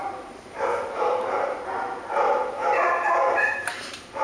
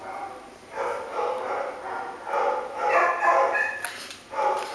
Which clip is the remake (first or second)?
first